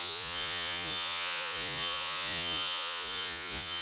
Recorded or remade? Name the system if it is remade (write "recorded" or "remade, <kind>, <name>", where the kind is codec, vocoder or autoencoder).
remade, vocoder, Vocos